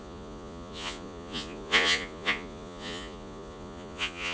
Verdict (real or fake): fake